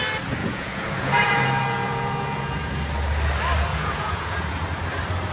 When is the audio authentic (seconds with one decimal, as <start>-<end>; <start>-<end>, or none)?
0.0-0.4; 2.8-3.7; 4.4-5.3